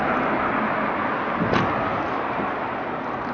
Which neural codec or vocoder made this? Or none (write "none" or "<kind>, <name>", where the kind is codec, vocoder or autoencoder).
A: none